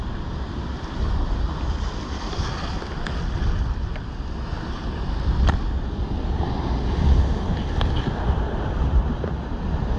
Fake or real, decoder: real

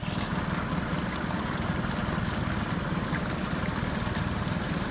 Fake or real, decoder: real